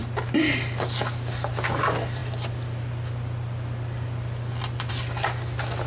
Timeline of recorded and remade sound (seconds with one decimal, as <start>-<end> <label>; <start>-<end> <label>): 0.0-5.9 recorded